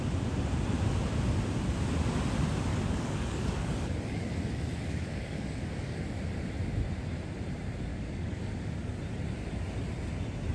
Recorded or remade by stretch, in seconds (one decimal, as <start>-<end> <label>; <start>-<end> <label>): 0.0-2.7 recorded; 2.7-6.0 remade; 6.0-7.9 recorded; 7.9-8.9 remade; 8.9-10.5 recorded